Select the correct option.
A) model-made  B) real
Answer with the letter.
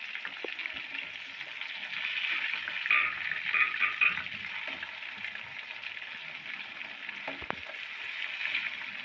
B